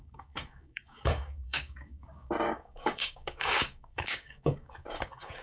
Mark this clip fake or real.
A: fake